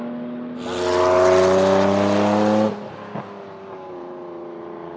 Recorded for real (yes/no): yes